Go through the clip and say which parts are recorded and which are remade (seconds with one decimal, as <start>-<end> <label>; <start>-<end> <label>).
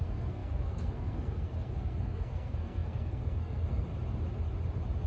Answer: 0.0-3.9 remade; 3.9-5.1 recorded